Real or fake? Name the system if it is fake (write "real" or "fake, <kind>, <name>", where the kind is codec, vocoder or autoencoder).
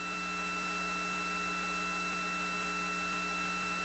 real